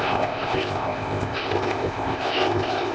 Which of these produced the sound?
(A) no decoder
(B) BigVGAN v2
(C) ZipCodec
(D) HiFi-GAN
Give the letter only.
C